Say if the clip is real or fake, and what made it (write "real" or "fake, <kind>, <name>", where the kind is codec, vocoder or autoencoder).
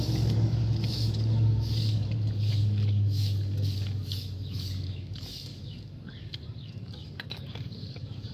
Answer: fake, codec, DAC